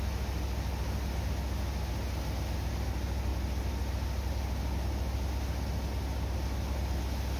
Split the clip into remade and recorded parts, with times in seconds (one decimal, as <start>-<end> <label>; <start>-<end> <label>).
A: 0.0-7.4 recorded